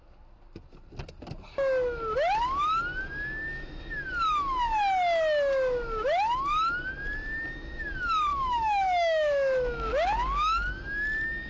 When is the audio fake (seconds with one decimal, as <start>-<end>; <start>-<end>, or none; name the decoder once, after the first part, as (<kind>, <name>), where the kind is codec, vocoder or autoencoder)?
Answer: 8.3-9.9 (autoencoder, DAC-VAE)